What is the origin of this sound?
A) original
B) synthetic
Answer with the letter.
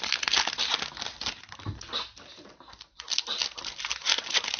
A